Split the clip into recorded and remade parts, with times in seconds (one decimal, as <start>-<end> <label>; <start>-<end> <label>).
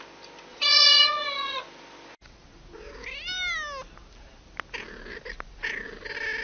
0.0-0.5 recorded; 0.5-1.6 remade; 1.6-6.4 recorded